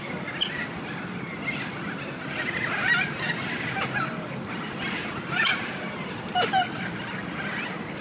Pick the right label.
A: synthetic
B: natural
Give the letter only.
B